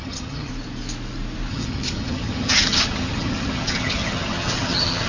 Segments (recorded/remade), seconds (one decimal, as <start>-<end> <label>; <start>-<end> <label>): 0.0-0.5 remade; 0.5-1.5 recorded; 1.5-5.1 remade